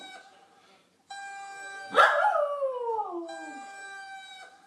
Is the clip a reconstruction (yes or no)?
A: no